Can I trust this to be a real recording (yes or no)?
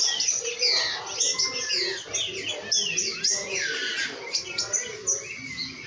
yes